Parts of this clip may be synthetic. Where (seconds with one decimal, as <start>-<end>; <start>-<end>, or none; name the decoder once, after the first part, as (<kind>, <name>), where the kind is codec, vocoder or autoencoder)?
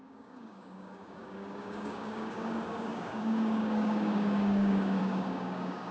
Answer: 0.0-5.9 (codec, DAC)